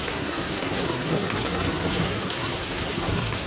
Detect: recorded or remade remade